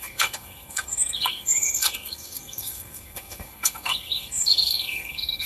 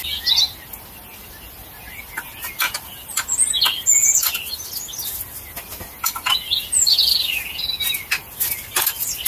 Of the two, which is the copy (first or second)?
first